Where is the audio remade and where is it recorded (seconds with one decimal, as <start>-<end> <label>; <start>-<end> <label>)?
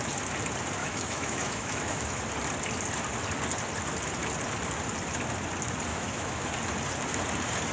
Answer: 0.0-0.8 recorded; 0.8-2.2 remade; 2.2-5.9 recorded; 5.9-6.5 remade; 6.5-7.7 recorded